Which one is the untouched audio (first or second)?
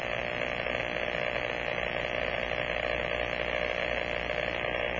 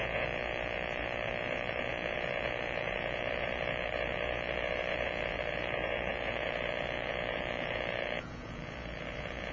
first